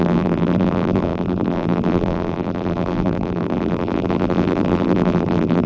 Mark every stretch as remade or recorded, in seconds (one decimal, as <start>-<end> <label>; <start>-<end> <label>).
0.0-5.7 remade